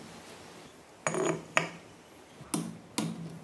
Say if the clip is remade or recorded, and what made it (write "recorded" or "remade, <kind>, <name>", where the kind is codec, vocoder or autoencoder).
recorded